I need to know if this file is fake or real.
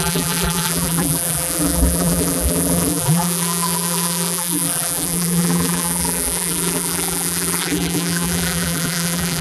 fake